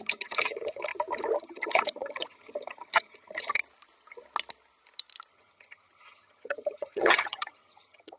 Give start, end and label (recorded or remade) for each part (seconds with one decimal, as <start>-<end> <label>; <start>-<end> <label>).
0.0-0.9 remade; 0.9-1.4 recorded; 1.4-3.6 remade; 3.6-5.3 recorded; 5.3-8.2 remade